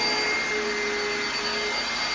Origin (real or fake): real